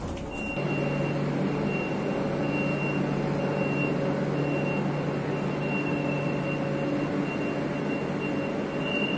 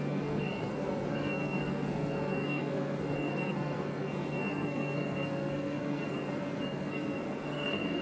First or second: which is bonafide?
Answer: first